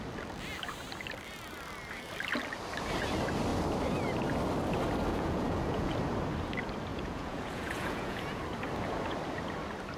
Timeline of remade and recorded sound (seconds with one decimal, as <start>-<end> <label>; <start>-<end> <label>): 0.0-5.1 recorded; 5.1-5.9 remade; 5.9-6.9 recorded; 6.9-8.4 remade; 8.4-10.0 recorded